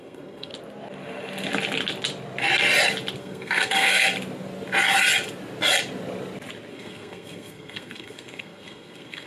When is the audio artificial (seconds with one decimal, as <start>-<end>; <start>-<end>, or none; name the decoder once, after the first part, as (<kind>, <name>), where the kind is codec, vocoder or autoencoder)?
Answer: 0.0-0.5 (codec, SNAC); 3.2-4.1; 6.7-9.3